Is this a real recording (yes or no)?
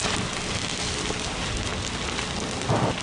yes